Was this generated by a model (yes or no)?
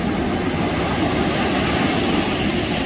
no